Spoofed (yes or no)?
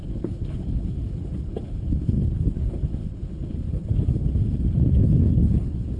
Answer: yes